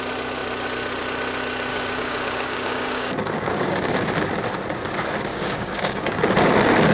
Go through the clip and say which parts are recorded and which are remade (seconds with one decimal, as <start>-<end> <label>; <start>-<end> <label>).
0.0-1.7 recorded; 1.7-3.9 remade; 3.9-5.3 recorded; 5.3-6.2 remade; 6.2-6.9 recorded